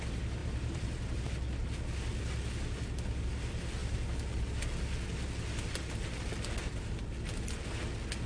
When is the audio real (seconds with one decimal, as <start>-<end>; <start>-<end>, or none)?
0.0-0.4; 1.2-8.3